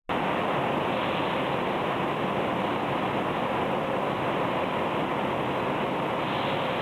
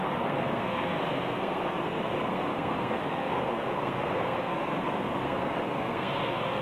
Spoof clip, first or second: second